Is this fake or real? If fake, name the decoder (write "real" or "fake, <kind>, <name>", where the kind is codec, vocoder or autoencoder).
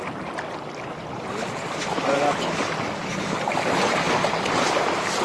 real